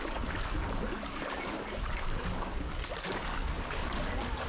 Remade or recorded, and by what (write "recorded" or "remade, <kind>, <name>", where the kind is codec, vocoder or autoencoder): remade, codec, DAC